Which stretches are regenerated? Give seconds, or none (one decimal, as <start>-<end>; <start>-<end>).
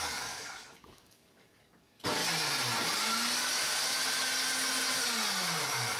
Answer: 0.0-2.2; 5.6-6.0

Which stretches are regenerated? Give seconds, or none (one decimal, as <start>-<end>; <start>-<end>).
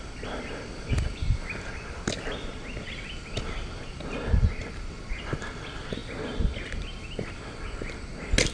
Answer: none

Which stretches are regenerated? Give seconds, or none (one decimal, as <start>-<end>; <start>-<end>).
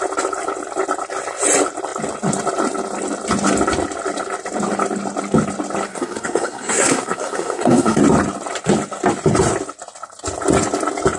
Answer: 5.9-8.0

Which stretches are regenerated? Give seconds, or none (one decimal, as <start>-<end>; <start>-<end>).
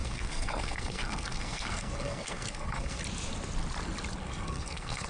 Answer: 0.0-3.0; 4.2-5.1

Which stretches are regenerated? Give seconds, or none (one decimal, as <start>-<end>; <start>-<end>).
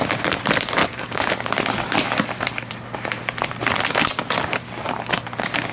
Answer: 0.8-1.3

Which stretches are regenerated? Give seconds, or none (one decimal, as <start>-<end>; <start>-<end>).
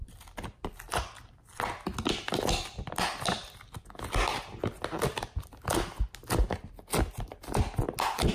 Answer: none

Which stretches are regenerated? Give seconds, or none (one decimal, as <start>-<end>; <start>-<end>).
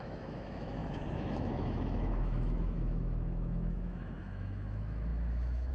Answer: 0.0-5.7